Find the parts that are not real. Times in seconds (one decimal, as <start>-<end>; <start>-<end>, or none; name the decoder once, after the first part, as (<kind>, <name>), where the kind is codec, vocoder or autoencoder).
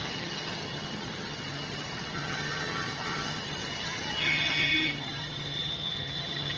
0.0-6.6 (vocoder, HiFi-GAN)